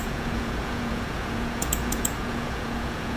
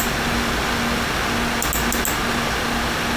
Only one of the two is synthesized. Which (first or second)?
first